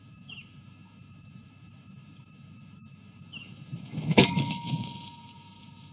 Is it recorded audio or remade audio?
remade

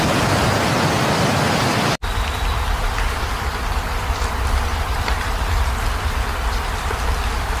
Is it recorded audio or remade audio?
recorded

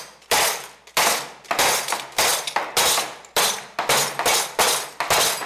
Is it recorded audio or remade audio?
recorded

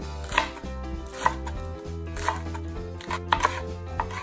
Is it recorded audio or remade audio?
recorded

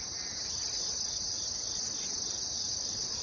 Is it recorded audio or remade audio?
recorded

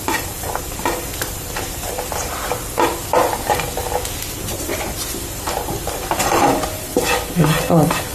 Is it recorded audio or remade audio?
recorded